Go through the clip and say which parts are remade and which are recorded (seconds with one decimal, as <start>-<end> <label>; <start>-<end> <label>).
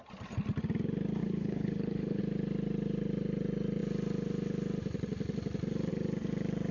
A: 0.0-1.2 recorded; 1.2-2.2 remade; 2.2-6.7 recorded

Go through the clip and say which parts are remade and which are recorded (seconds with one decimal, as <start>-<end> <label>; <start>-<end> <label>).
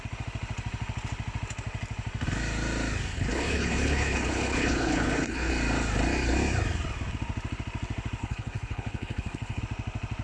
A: 0.0-3.1 recorded; 3.1-5.5 remade; 5.5-8.2 recorded; 8.2-9.6 remade; 9.6-10.2 recorded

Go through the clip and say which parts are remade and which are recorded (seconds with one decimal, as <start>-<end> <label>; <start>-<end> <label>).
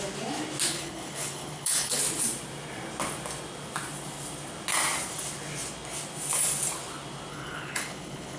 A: 0.0-0.7 recorded; 0.7-2.0 remade; 2.0-7.3 recorded; 7.3-8.4 remade